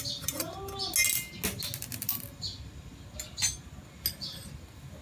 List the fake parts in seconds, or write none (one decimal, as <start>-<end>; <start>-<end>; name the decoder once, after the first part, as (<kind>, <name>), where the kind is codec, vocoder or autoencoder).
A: none